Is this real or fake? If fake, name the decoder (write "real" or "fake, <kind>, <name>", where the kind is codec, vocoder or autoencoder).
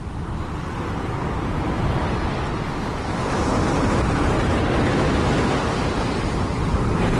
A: real